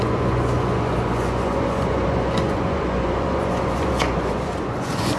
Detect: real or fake fake